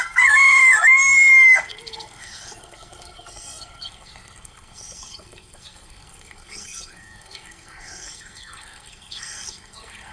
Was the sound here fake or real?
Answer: fake